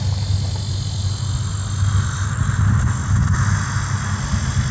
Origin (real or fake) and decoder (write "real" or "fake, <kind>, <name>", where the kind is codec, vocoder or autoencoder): real